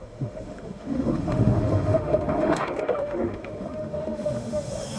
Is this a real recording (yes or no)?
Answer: no